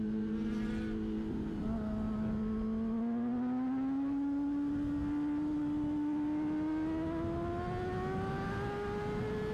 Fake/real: real